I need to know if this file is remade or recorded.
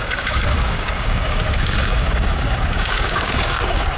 remade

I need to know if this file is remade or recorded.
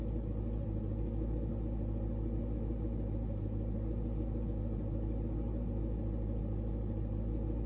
recorded